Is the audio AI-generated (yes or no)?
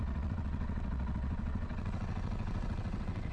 yes